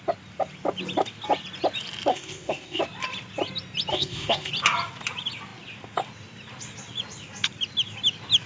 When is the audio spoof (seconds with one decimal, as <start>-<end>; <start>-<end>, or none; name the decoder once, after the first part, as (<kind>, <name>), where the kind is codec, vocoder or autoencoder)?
2.1-2.8 (codec, ZipCodec); 3.9-4.5